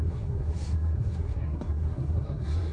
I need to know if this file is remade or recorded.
remade